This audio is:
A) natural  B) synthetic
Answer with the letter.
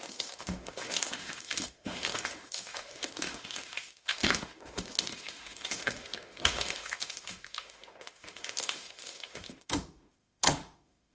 B